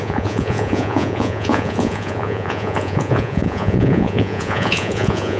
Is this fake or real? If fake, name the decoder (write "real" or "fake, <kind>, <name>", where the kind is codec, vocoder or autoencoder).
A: fake, vocoder, Vocos